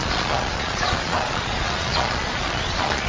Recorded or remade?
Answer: remade